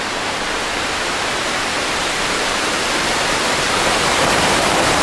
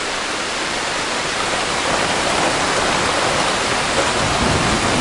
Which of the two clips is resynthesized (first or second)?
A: first